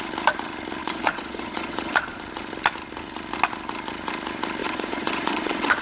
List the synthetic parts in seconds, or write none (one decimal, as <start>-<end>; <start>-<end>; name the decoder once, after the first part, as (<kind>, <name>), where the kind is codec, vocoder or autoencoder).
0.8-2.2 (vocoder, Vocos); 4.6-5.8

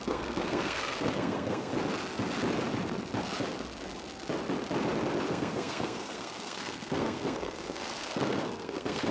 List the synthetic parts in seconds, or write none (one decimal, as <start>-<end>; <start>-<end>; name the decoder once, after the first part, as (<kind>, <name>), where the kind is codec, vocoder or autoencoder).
0.0-1.7 (codec, SNAC); 5.3-9.1

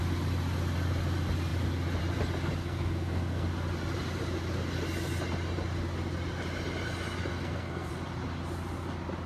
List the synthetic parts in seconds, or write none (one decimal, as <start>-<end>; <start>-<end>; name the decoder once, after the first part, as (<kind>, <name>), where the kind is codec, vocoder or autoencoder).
2.6-3.5 (codec, SNAC); 7.3-7.9